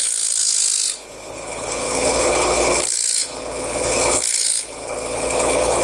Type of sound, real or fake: fake